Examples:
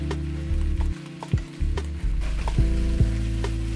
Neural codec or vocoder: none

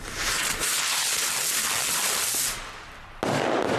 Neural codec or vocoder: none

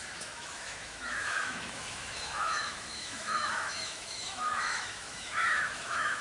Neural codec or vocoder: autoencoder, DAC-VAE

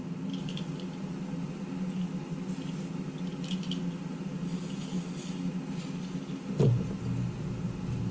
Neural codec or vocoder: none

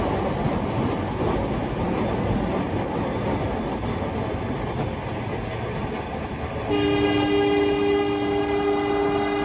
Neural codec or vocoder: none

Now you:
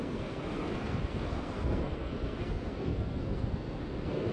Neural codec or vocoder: codec, SNAC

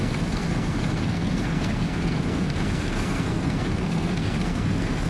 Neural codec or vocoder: codec, SNAC